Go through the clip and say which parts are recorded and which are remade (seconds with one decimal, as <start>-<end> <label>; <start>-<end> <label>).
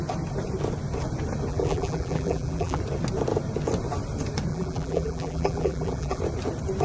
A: 0.0-1.5 recorded; 1.5-2.8 remade; 2.8-4.5 recorded; 4.5-6.2 remade; 6.2-6.8 recorded